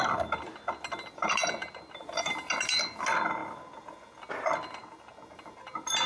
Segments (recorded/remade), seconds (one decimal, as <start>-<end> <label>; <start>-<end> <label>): 0.0-6.1 recorded